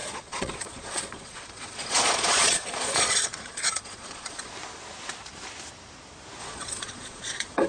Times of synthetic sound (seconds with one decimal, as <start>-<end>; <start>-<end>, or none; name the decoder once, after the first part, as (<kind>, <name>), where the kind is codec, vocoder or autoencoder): 0.0-4.5 (vocoder, Vocos); 6.4-7.7